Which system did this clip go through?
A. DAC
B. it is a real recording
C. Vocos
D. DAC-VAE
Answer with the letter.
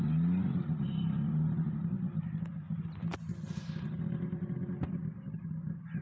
B